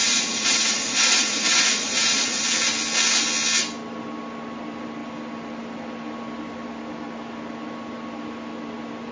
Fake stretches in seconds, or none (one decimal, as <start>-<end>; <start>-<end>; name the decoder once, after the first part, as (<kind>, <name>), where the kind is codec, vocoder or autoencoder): 0.0-2.4 (vocoder, Vocos)